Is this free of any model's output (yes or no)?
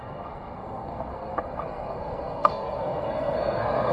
no